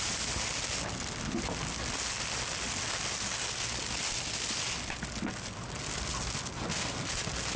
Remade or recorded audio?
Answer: recorded